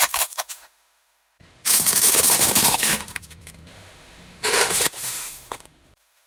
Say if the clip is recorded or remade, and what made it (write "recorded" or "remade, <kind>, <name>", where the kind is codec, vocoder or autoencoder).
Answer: remade, autoencoder, DAC-VAE